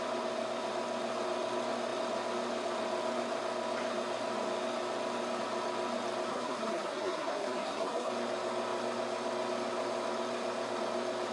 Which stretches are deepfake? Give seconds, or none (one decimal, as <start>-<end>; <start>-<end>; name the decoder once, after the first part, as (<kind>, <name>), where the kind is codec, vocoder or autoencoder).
6.3-8.1 (codec, SNAC)